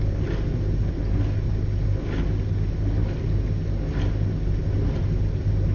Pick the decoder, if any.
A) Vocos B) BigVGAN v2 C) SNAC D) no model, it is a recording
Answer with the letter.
D